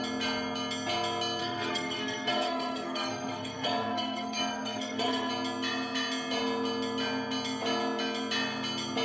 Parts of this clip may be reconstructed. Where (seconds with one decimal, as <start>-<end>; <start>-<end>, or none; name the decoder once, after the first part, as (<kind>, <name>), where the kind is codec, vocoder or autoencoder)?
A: 1.4-5.3 (codec, SNAC)